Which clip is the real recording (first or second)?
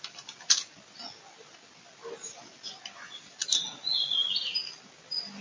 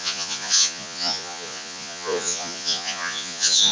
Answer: first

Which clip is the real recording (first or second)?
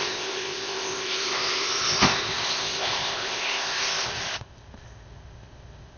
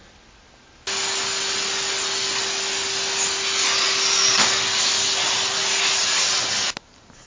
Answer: second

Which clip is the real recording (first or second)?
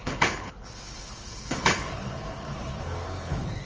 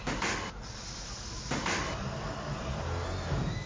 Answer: second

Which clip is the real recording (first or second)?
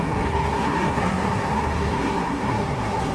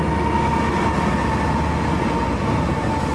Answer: second